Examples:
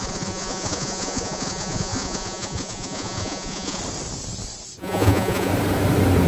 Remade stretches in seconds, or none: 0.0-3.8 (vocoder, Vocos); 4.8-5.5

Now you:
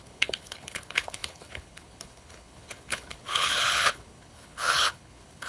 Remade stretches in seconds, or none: 0.0-5.5 (codec, HILCodec)

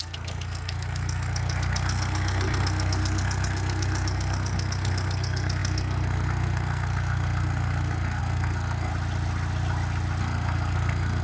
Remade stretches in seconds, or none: 0.0-8.9 (codec, SNAC); 10.2-11.2

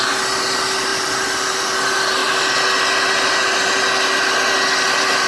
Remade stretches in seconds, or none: none

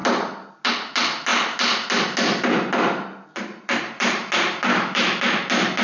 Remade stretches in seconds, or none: 4.7-5.2 (autoencoder, DAC-VAE)

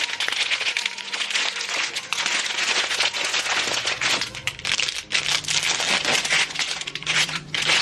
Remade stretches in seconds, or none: 0.0-4.5 (vocoder, Vocos); 6.0-7.8

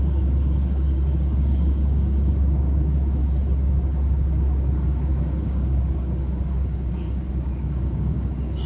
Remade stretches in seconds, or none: 0.0-3.2 (codec, DAC); 3.7-8.7

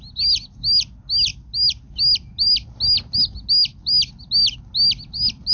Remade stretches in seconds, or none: none